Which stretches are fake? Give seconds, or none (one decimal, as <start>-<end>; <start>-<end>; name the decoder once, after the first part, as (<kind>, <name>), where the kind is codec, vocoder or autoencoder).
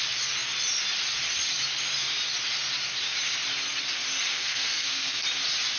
4.3-5.2 (codec, SNAC)